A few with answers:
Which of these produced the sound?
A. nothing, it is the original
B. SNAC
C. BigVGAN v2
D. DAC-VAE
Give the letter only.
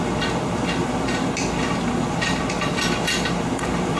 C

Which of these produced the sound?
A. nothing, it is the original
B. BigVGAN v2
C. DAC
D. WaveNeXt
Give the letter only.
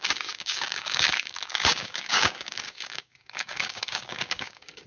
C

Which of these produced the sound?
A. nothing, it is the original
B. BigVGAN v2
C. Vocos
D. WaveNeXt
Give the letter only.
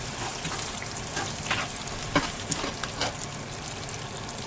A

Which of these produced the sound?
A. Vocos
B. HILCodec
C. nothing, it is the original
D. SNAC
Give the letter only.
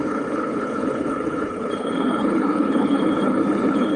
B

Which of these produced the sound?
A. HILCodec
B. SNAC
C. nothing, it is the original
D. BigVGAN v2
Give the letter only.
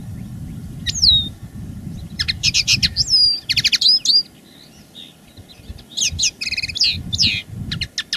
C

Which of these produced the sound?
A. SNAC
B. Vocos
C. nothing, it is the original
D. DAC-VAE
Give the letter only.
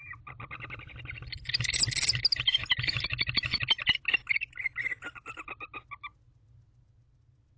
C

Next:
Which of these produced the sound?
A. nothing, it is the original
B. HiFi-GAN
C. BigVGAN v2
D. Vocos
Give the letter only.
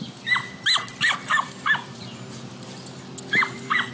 A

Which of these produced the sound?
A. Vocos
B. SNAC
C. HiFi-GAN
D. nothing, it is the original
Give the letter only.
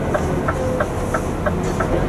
D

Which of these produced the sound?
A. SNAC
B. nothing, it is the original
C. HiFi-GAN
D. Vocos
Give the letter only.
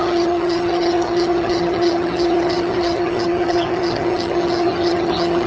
C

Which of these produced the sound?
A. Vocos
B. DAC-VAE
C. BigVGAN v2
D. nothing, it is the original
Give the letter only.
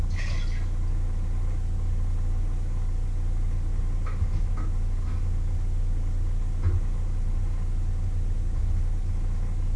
D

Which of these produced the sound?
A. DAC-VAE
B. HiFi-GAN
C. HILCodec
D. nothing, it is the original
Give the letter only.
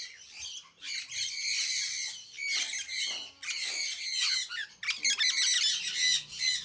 D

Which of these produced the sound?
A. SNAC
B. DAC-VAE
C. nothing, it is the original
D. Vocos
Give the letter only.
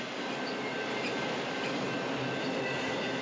C